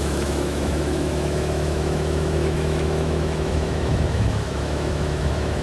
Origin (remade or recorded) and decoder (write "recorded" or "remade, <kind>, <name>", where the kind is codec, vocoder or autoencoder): remade, autoencoder, DAC-VAE